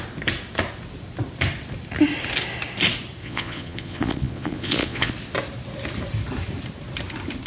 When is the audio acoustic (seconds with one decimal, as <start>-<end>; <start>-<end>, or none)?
0.0-3.2; 5.1-7.5